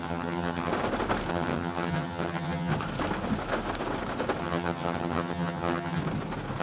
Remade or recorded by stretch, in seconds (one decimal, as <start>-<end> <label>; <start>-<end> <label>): 0.0-0.7 remade; 0.7-1.3 recorded; 1.3-2.7 remade; 2.7-4.4 recorded; 4.4-6.0 remade; 6.0-6.6 recorded